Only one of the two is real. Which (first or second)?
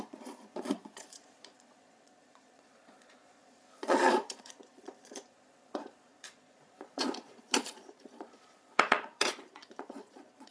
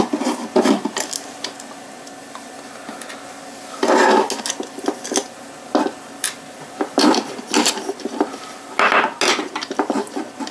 second